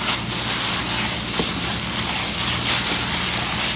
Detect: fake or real real